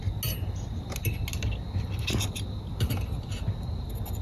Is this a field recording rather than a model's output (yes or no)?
yes